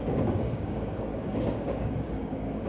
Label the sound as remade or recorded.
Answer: remade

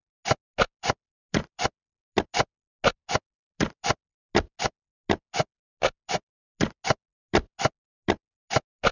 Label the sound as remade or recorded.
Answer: recorded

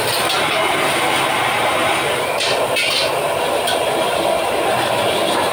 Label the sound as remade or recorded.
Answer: recorded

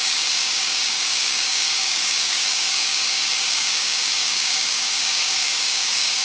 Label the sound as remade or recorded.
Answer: remade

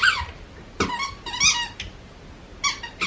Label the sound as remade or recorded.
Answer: recorded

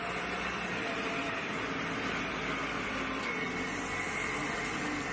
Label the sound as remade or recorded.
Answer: recorded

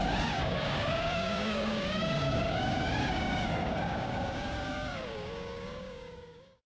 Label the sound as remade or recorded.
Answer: remade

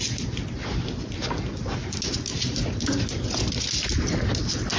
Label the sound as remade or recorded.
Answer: recorded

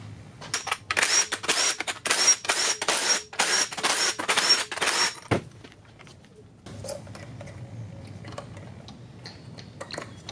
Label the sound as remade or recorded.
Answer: recorded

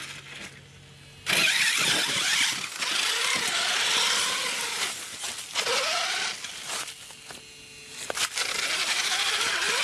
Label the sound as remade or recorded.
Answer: recorded